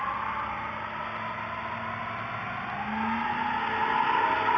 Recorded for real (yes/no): yes